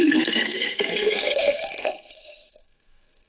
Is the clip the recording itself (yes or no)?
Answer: no